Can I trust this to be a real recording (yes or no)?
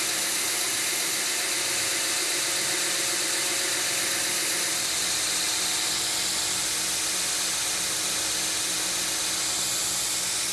yes